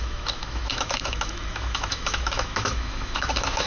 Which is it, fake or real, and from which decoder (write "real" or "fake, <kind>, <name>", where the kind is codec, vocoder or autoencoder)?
fake, autoencoder, DAC-VAE